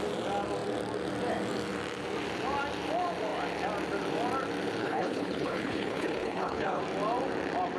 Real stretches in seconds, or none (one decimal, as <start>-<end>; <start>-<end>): 0.0-4.8; 6.8-7.8